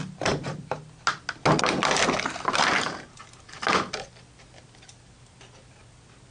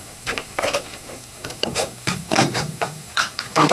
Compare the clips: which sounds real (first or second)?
first